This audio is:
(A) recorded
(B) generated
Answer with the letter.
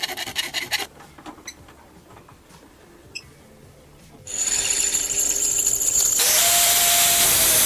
A